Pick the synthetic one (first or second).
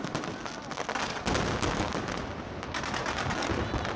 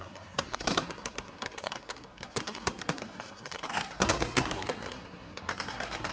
second